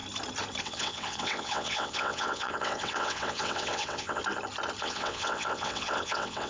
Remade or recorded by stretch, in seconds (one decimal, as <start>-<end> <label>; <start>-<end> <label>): 0.0-0.6 recorded; 0.6-4.2 remade; 4.2-4.8 recorded; 4.8-6.5 remade